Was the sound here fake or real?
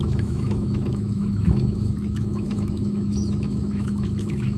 fake